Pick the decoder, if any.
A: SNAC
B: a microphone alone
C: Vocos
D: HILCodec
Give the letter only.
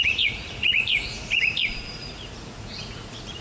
C